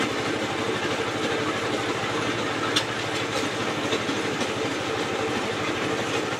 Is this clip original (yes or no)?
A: yes